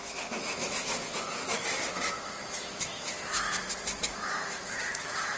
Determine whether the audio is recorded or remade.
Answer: remade